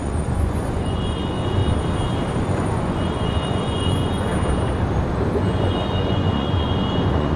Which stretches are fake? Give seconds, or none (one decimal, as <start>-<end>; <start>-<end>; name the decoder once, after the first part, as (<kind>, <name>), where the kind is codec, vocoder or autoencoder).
0.0-1.6 (vocoder, Vocos); 2.4-4.3; 5.4-7.4